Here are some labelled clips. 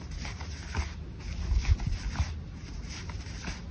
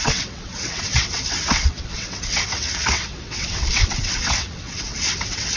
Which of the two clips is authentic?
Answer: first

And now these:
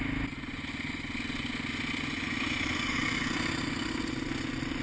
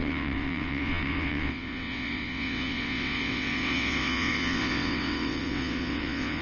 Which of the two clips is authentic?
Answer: first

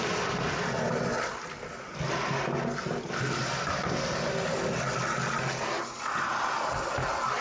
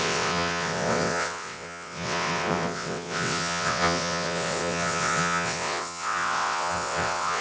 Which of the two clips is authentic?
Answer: first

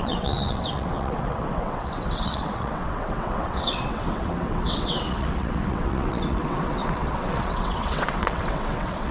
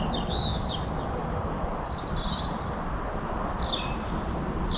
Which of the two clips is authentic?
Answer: second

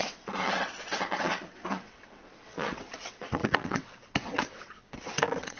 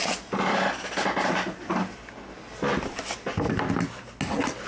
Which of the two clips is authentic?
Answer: second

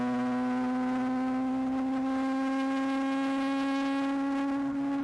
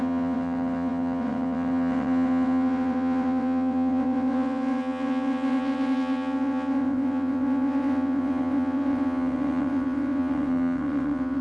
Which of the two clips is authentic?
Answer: first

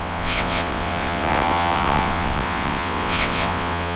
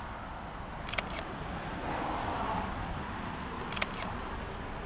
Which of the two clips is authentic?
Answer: second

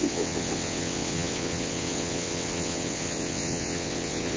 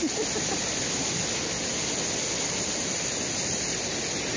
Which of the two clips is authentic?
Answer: second